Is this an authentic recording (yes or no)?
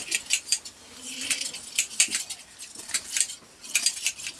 yes